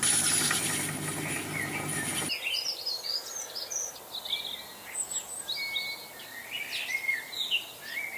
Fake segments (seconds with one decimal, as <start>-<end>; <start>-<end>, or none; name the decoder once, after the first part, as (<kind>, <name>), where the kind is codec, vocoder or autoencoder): none